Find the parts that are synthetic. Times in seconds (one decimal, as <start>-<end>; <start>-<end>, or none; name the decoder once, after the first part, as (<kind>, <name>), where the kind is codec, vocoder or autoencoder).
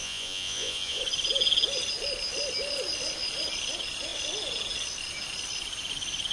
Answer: 0.0-1.0 (vocoder, Vocos)